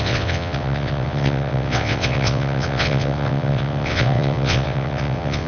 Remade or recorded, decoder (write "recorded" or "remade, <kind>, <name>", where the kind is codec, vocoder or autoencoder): remade, vocoder, WaveNeXt